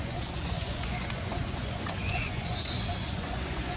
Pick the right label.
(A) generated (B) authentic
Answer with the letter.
A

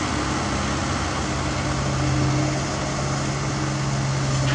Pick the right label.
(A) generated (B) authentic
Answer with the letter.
B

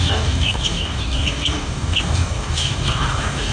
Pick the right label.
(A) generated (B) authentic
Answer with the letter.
A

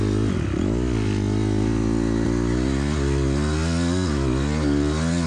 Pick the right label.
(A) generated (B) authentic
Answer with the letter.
B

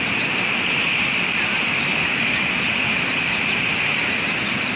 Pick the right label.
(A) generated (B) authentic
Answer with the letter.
A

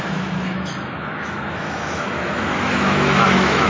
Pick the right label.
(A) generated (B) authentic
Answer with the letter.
A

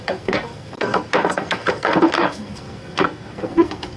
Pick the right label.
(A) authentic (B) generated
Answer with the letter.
B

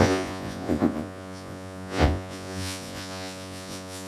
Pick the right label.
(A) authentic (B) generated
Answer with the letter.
B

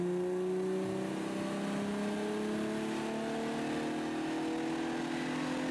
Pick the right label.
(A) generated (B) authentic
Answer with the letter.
B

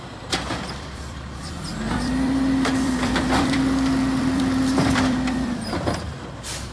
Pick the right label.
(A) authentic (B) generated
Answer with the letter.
B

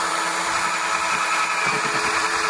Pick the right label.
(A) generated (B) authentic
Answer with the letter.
A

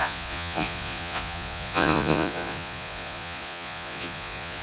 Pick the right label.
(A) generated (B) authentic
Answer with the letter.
A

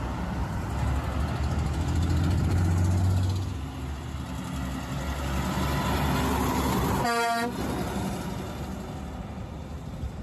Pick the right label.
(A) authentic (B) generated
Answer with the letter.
A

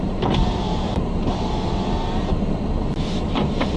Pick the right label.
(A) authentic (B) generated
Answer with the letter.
B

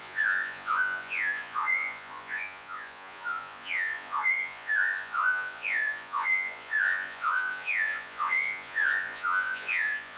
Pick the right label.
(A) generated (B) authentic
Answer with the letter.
A